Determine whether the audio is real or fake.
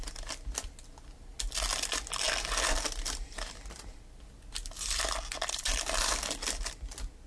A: real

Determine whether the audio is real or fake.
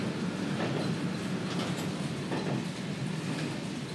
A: real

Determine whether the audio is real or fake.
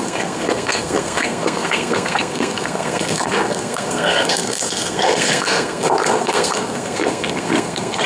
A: fake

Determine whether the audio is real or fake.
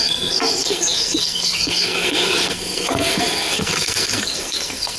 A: fake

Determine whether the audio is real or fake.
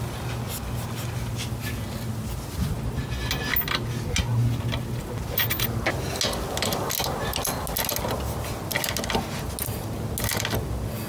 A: real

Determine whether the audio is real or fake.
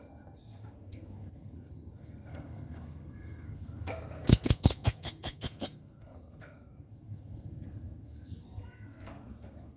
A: fake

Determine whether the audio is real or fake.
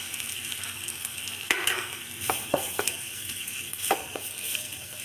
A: fake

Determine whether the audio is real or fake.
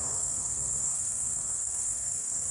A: fake